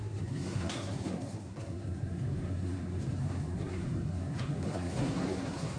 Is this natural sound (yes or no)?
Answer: no